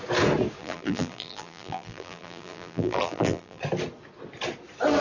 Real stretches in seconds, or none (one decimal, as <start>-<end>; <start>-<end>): 0.0-0.6; 3.6-5.0